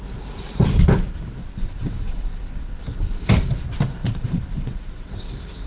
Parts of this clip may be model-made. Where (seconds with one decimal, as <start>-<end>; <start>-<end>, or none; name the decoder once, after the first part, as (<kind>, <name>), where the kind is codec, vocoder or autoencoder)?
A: 1.4-2.8 (vocoder, WaveNeXt); 4.0-5.3